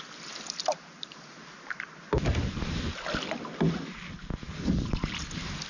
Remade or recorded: recorded